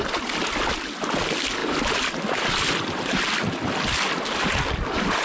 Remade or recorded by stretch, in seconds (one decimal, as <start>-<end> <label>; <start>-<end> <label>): 0.0-5.2 recorded